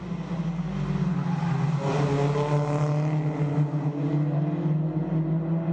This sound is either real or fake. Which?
real